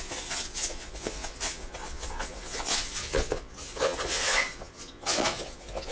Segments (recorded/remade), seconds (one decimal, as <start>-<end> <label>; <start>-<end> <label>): 0.0-5.9 remade

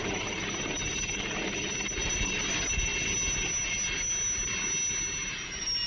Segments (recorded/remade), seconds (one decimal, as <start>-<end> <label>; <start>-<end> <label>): 0.0-5.9 recorded